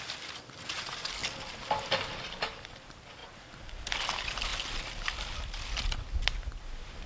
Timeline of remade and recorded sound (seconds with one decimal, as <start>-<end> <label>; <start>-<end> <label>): 0.0-7.1 recorded

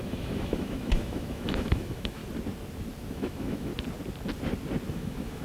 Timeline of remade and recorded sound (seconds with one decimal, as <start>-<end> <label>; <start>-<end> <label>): 0.0-2.2 remade; 2.2-3.1 recorded; 3.1-3.7 remade; 3.7-4.9 recorded; 4.9-5.4 remade

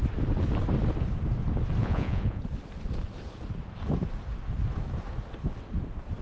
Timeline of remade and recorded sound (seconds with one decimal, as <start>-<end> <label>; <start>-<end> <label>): 0.0-1.8 recorded; 1.8-2.4 remade; 2.4-6.2 recorded

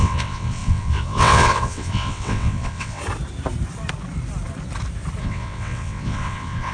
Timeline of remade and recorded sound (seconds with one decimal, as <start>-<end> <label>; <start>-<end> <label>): 0.0-3.0 remade; 3.0-5.2 recorded; 5.2-6.7 remade

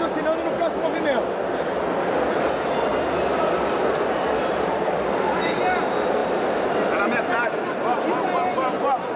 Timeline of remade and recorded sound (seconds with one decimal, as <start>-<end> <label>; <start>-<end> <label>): 0.0-9.2 recorded

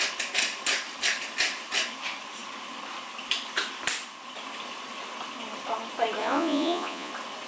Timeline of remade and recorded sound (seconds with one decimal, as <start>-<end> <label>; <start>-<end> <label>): 0.0-6.2 recorded; 6.2-7.1 remade; 7.1-7.5 recorded

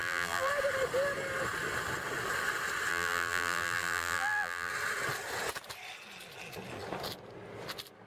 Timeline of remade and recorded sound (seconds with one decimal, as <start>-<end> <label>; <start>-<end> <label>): 0.0-0.5 remade; 0.5-2.9 recorded; 2.9-4.7 remade; 4.7-8.1 recorded

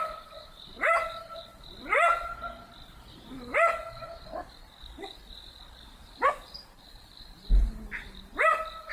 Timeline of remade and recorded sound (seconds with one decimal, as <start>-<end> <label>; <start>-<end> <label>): 0.0-8.9 recorded